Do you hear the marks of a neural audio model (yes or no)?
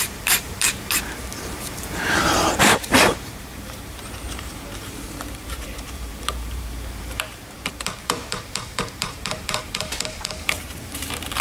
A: yes